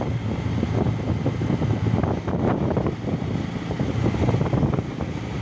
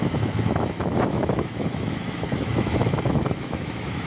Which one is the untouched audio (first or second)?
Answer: first